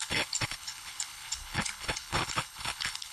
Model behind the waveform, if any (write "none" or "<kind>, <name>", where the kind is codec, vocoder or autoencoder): codec, HILCodec